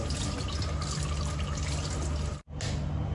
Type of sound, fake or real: real